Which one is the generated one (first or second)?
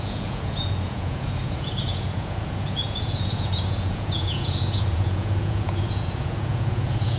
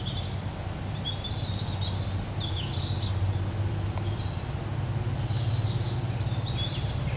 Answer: first